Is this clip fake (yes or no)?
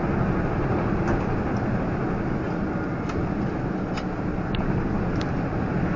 no